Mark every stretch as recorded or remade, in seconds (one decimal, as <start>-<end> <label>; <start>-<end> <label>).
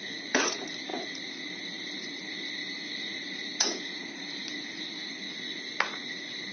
0.0-6.5 remade